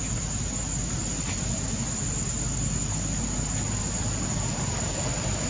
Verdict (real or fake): real